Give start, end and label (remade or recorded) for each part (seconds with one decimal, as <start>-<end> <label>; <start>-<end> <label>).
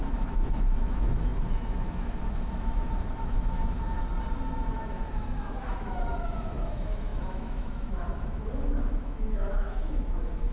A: 0.0-4.0 remade; 4.0-4.7 recorded; 4.7-10.5 remade